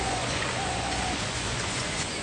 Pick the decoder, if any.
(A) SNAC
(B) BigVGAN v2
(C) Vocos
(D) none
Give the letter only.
C